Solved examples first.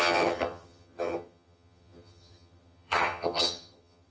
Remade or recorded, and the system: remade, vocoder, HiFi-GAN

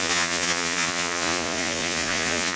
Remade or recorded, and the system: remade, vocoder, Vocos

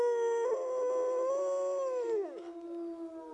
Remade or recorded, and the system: recorded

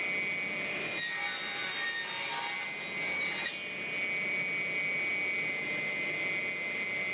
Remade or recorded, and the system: recorded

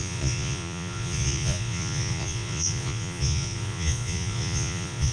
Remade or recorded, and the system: remade, vocoder, Vocos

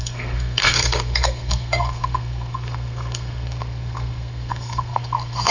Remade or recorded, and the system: remade, codec, SNAC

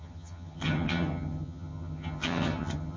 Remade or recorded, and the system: remade, vocoder, HiFi-GAN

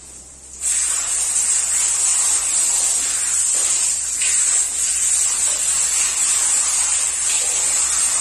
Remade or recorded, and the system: recorded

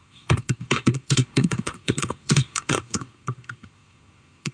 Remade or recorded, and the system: remade, codec, SNAC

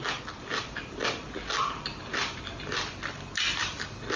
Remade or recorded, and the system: recorded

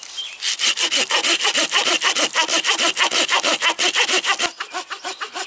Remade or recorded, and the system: recorded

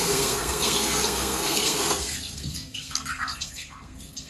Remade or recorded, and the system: remade, codec, SNAC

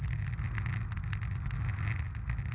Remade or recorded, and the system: recorded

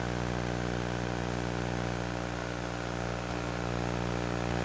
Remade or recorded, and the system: recorded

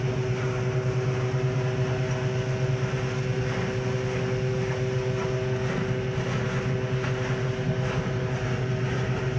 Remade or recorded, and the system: recorded